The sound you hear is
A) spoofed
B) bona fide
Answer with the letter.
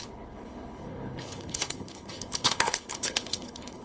A